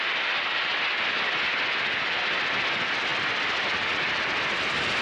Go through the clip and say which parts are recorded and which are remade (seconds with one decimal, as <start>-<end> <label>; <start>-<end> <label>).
0.0-5.0 recorded

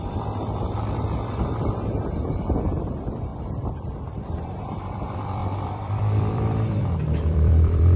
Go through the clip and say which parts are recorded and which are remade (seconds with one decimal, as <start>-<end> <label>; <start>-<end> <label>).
0.0-8.0 remade

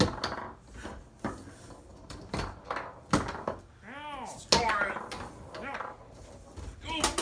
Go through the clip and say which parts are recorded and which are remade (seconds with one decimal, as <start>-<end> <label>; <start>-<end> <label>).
0.0-1.9 recorded; 1.9-2.6 remade; 2.6-7.2 recorded

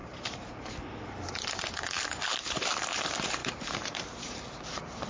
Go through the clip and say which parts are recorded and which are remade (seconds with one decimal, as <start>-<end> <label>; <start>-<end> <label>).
0.0-5.1 remade